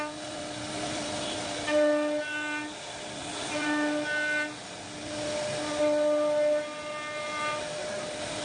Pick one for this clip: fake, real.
real